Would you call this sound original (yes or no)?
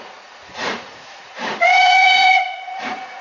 no